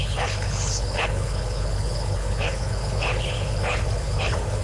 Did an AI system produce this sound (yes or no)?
yes